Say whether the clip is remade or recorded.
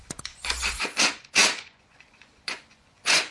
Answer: remade